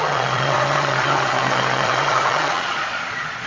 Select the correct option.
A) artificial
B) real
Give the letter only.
A